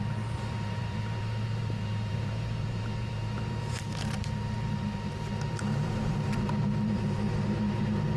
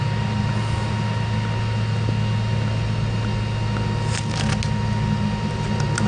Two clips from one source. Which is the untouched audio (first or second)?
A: second